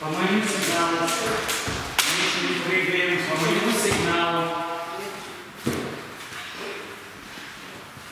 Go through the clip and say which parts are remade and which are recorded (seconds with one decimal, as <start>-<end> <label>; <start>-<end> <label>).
0.0-8.1 recorded